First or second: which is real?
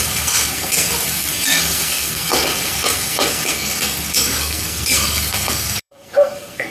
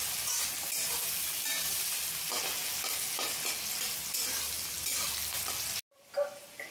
second